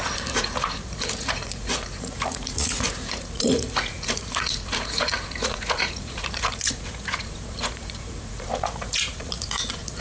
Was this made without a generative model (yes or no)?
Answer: no